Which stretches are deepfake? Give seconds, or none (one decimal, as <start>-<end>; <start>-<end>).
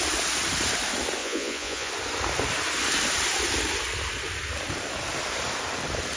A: 1.2-1.9